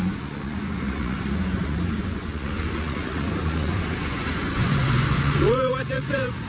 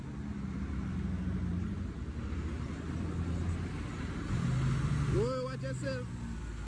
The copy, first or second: first